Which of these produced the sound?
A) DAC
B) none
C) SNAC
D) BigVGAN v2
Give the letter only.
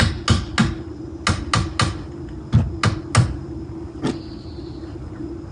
B